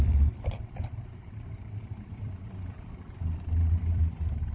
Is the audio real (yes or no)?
no